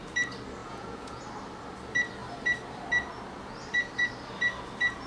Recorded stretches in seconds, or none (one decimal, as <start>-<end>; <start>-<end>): 0.0-0.6; 1.2-5.1